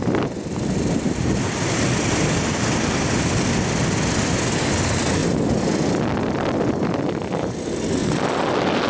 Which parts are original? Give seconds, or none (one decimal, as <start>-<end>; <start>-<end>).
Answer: 0.0-8.9